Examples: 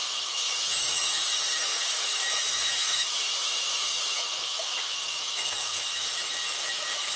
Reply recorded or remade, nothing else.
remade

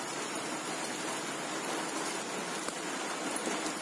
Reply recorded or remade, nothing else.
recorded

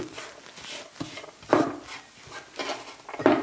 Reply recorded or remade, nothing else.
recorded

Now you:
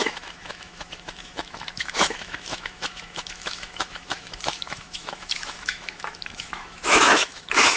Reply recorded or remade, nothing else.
remade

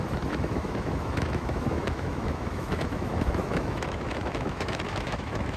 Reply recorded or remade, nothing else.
remade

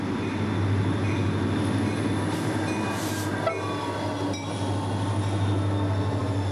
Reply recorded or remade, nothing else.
recorded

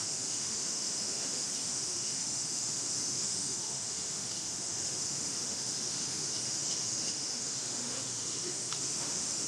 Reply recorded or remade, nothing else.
remade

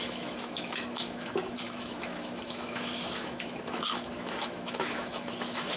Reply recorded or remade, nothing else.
remade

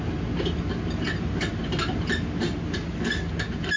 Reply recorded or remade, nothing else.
recorded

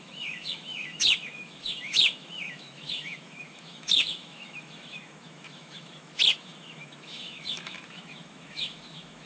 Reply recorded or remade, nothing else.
remade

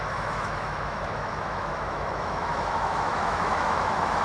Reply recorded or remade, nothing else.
remade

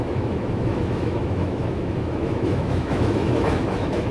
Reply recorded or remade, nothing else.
remade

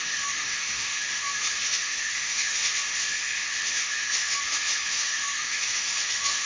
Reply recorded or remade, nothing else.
remade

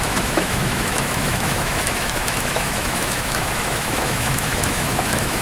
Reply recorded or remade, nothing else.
remade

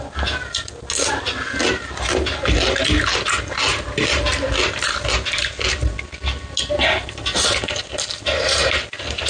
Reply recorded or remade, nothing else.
recorded